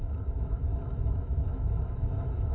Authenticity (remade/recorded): remade